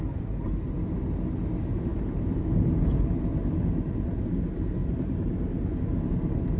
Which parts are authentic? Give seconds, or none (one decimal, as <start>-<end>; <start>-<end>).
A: 0.0-4.8; 5.8-6.6